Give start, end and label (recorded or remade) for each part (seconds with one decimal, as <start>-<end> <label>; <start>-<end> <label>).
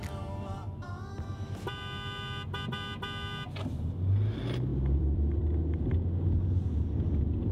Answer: 0.0-4.7 recorded; 4.7-5.8 remade; 5.8-7.5 recorded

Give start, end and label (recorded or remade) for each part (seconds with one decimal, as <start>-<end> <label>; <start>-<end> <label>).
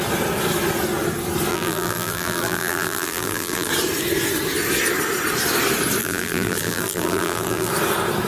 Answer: 0.0-1.5 recorded; 1.5-3.7 remade; 3.7-6.0 recorded; 6.0-7.7 remade; 7.7-8.3 recorded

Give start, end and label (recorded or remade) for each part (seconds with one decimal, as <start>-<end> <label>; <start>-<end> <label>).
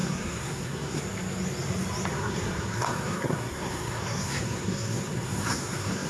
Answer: 0.0-1.0 remade; 1.0-2.1 recorded; 2.1-6.1 remade